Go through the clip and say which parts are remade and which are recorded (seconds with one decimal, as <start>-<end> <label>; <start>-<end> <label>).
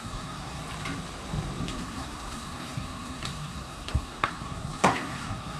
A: 0.0-0.6 remade; 0.6-1.6 recorded; 1.6-5.6 remade